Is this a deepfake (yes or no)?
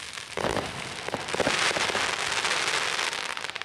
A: no